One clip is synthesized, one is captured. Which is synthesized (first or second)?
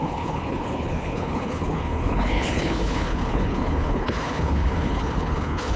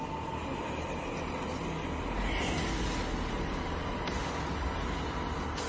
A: first